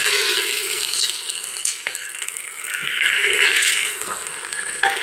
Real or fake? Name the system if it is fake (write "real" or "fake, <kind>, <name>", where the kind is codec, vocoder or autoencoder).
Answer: fake, codec, SNAC